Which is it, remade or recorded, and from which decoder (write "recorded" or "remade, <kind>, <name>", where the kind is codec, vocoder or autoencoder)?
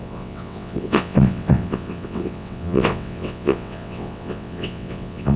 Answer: remade, vocoder, WaveNeXt